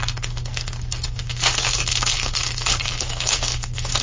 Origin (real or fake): fake